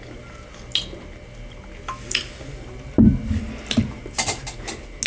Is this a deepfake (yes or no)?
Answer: no